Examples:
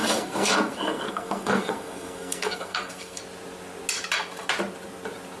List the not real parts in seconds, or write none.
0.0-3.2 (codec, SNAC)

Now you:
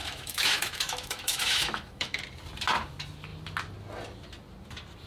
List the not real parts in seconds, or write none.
0.0-2.2 (autoencoder, DAC-VAE)

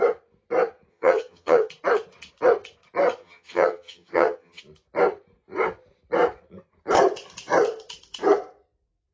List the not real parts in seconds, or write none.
0.9-1.7 (vocoder, HiFi-GAN); 3.2-4.6

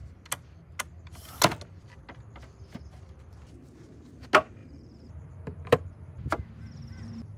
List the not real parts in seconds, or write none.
4.6-6.5 (vocoder, BigVGAN v2)